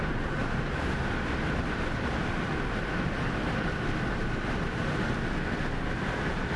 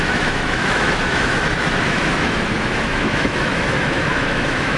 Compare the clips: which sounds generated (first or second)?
second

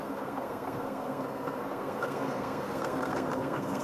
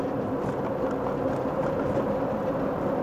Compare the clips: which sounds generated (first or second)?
first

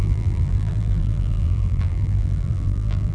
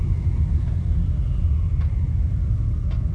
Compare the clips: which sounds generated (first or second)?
first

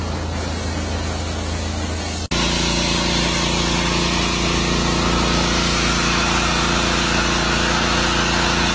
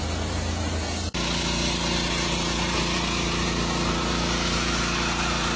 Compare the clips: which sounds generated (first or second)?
second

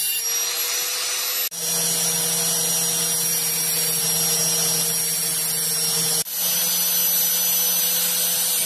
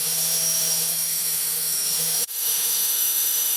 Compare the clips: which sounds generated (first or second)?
second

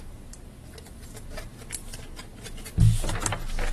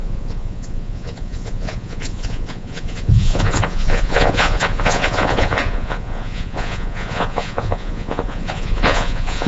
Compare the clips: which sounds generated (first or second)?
second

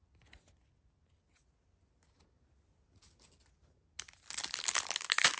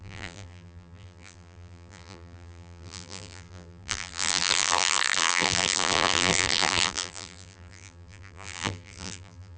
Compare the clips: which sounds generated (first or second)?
second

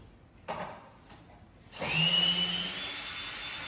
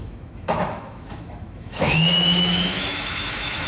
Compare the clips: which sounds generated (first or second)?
second